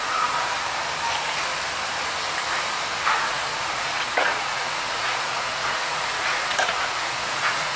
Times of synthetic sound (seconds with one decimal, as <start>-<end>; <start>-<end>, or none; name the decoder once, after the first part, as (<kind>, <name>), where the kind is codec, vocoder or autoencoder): 0.0-0.5 (vocoder, Vocos); 3.1-7.8